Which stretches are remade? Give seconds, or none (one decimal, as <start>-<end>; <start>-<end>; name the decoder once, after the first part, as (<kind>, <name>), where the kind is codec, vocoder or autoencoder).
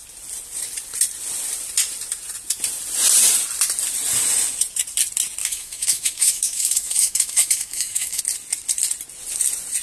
5.4-8.2 (autoencoder, DAC-VAE)